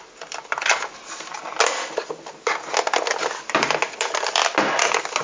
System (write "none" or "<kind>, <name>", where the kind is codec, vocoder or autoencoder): none